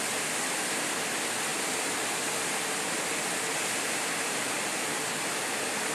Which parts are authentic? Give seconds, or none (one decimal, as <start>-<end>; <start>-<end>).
0.0-5.9